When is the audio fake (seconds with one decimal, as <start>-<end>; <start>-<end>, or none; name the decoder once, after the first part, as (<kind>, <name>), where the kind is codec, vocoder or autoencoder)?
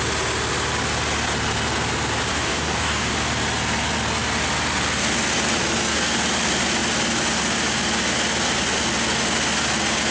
2.3-3.1 (codec, DAC)